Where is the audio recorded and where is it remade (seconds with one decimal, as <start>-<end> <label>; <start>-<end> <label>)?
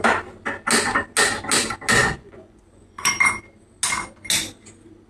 0.0-2.0 recorded; 2.0-3.1 remade; 3.1-5.1 recorded